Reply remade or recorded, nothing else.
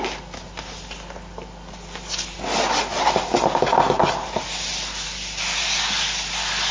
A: recorded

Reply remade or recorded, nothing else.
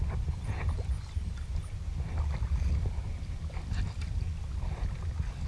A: recorded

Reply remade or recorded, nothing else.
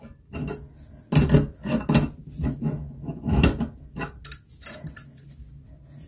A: recorded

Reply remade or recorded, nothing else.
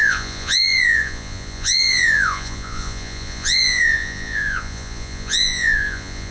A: remade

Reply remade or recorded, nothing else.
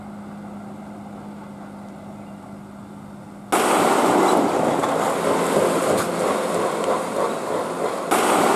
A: recorded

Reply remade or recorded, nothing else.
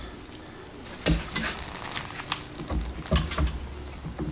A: recorded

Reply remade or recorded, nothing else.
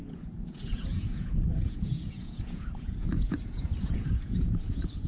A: remade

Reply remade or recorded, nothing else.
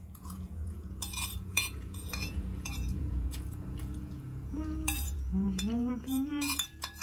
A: remade